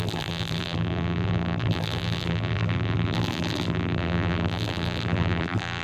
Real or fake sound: fake